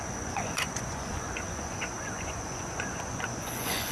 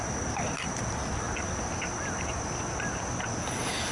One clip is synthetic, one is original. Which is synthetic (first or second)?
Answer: first